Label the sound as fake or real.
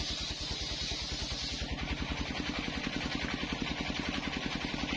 real